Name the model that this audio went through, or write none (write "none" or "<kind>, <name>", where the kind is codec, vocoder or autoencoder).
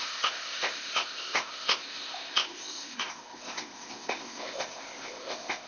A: codec, ZipCodec